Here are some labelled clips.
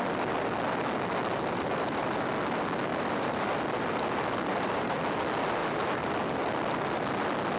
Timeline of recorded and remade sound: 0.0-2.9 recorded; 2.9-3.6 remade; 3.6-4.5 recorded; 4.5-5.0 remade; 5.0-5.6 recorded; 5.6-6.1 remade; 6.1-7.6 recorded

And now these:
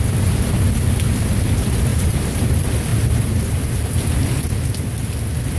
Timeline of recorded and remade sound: 0.0-1.9 recorded; 1.9-2.5 remade; 2.5-2.9 recorded; 2.9-4.0 remade; 4.0-5.6 recorded

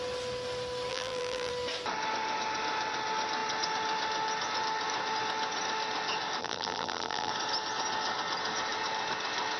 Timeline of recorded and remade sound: 0.0-0.9 recorded; 0.9-1.5 remade; 1.5-6.4 recorded; 6.4-7.3 remade; 7.3-9.6 recorded